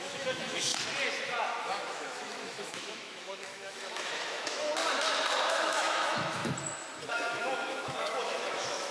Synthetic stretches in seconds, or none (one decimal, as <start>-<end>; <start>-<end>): 0.0-0.7; 1.6-4.7; 5.5-6.4; 7.1-8.9